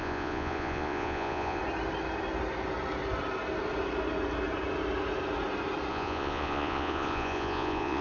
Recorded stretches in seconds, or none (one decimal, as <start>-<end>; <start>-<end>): 1.6-5.9